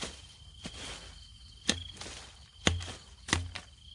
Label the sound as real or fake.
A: real